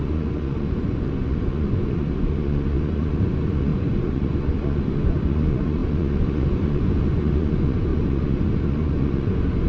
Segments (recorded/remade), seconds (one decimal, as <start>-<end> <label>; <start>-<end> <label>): 0.0-9.7 remade